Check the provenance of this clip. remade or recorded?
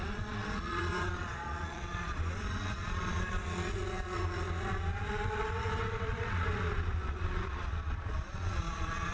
remade